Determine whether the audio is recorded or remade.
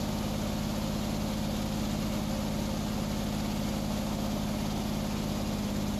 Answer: recorded